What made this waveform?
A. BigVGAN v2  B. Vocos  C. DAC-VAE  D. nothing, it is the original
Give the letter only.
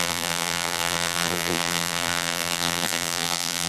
A